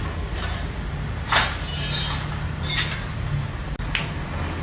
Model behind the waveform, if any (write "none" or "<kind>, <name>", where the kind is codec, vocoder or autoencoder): none